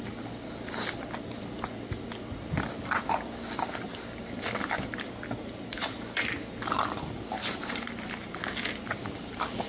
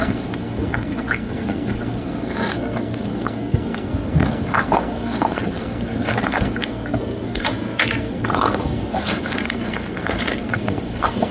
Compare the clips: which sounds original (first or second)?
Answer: first